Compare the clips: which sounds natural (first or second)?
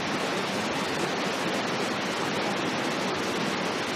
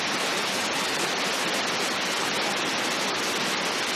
first